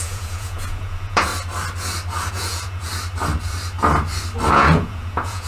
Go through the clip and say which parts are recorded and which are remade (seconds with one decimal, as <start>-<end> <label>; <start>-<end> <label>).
0.0-1.3 remade; 1.3-2.3 recorded; 2.3-2.9 remade; 2.9-4.5 recorded; 4.5-5.5 remade